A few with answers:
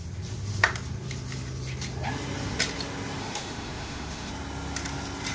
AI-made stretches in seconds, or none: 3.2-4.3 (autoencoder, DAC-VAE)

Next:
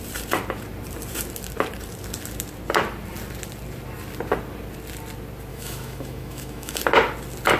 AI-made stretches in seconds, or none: 5.5-6.8 (autoencoder, DAC-VAE)